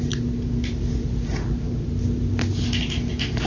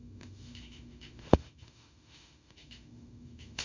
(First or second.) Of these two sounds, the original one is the first